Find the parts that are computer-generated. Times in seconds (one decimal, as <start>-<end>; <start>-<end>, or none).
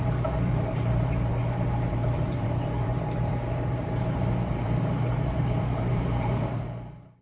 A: 0.0-1.3; 1.9-7.2